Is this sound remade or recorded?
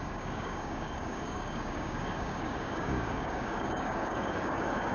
remade